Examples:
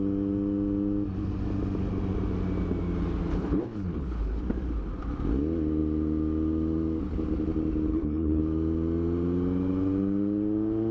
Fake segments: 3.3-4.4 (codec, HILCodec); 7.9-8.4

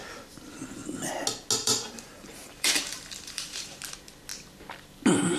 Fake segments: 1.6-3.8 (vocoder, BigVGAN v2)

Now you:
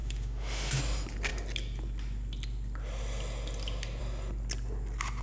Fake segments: 0.0-0.8 (autoencoder, DAC-VAE)

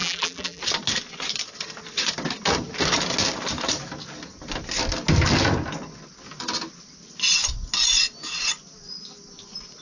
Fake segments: 0.0-0.6 (vocoder, BigVGAN v2)